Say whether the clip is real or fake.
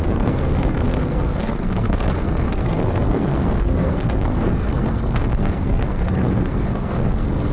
fake